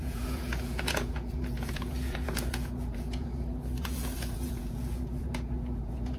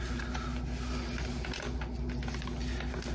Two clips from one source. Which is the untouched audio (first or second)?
second